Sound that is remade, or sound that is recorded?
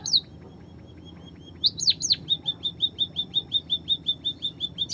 recorded